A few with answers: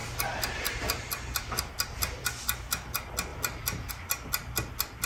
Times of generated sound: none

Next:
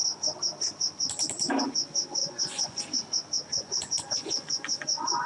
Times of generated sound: 2.2-2.8; 3.5-5.3

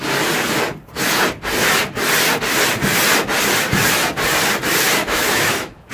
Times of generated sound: 5.0-5.9

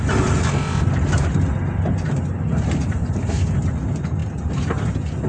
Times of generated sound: none

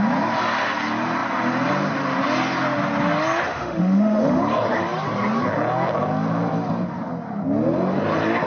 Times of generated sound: 3.5-4.4

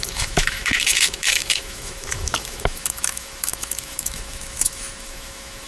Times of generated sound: 0.0-5.7

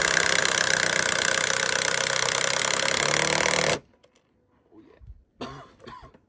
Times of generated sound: none